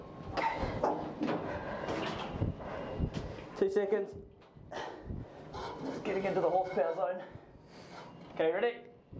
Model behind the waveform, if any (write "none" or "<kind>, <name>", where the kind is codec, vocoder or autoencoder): none